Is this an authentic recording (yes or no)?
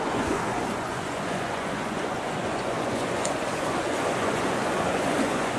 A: no